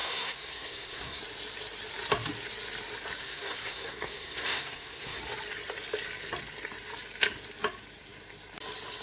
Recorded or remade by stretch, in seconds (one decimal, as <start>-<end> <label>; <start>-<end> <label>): 0.0-1.2 remade; 1.2-3.2 recorded; 3.2-5.2 remade; 5.2-9.0 recorded